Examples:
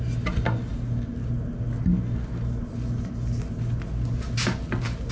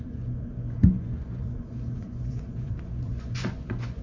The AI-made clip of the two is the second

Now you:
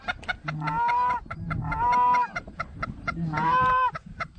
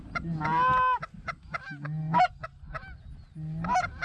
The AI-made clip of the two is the first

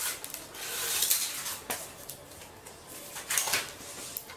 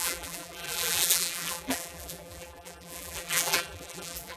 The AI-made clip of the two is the second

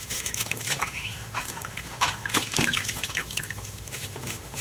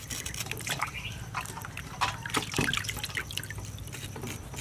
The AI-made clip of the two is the first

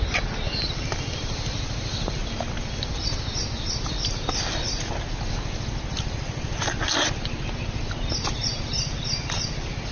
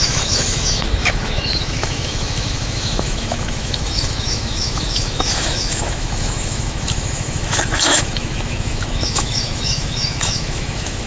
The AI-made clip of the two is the second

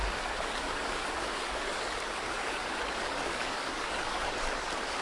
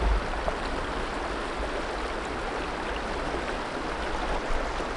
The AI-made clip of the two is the first